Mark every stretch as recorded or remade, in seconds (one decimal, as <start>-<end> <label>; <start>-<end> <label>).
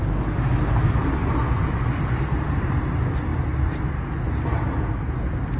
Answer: 0.0-5.6 recorded